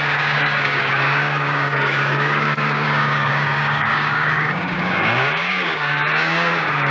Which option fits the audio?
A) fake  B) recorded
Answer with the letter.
A